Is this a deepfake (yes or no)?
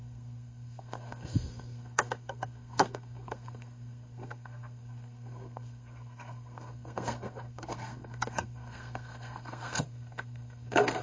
yes